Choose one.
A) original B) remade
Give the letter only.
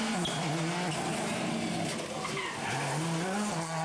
A